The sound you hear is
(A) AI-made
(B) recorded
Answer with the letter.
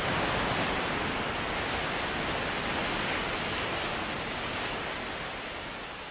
B